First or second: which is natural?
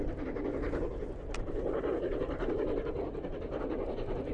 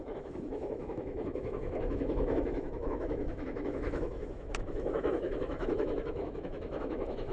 first